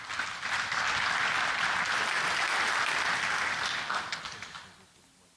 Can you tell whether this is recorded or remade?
recorded